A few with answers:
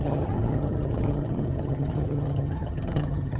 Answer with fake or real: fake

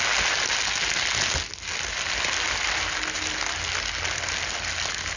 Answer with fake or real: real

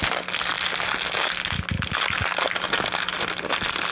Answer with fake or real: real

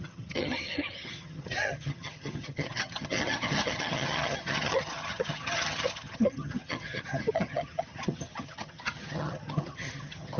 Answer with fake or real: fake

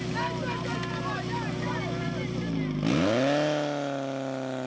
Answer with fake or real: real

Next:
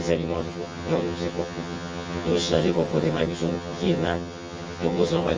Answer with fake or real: fake